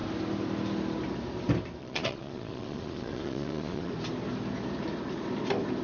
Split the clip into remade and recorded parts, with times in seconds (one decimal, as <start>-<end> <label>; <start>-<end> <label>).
0.0-1.8 recorded; 1.8-3.9 remade; 3.9-5.8 recorded